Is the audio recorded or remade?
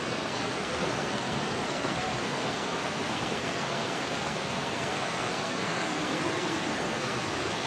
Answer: remade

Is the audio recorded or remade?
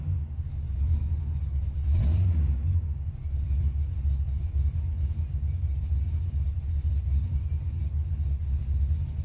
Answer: recorded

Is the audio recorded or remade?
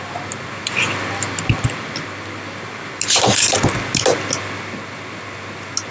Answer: recorded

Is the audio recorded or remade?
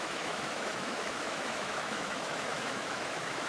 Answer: remade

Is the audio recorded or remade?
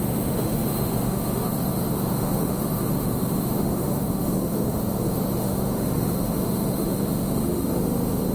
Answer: remade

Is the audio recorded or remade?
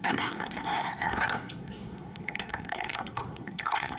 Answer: remade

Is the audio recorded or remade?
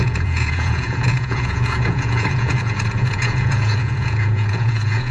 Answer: remade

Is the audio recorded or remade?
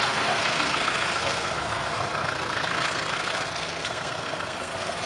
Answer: remade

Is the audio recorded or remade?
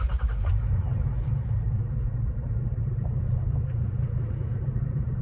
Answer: remade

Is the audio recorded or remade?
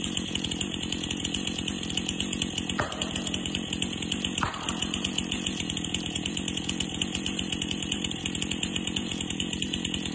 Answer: remade